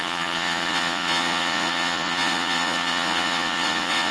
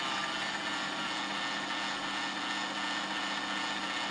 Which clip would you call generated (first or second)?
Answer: first